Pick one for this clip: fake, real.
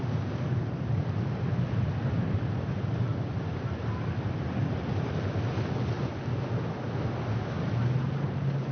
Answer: real